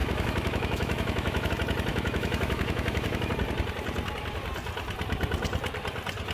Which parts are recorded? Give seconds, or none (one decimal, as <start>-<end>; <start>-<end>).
1.5-1.9; 3.3-6.3